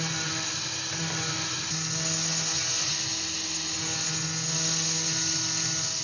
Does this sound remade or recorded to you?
recorded